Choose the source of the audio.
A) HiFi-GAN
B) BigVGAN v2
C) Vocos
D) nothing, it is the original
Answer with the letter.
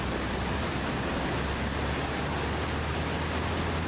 D